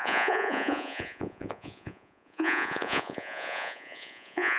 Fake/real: fake